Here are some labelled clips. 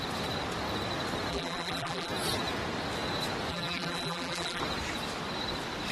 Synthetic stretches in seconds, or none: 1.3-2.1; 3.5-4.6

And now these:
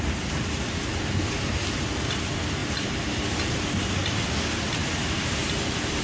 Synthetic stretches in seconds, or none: 2.6-3.2; 4.8-5.4

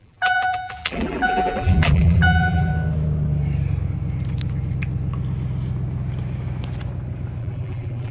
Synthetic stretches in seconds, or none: 0.0-2.7; 7.4-8.1

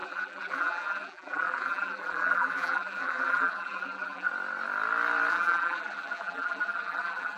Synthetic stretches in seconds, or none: 0.0-4.3; 5.3-7.4

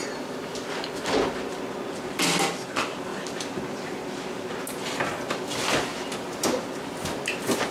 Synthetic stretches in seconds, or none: none

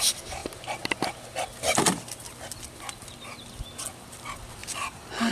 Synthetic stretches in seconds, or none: 4.6-5.3

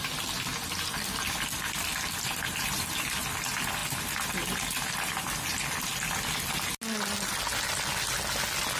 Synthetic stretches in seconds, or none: none

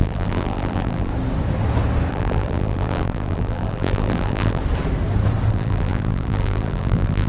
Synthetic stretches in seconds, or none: 0.0-1.1; 2.1-4.6; 5.5-7.3